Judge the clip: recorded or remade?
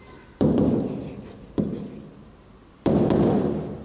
recorded